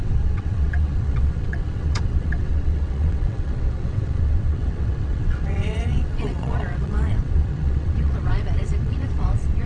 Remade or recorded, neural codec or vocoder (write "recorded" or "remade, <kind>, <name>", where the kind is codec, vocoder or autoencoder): remade, vocoder, WaveNeXt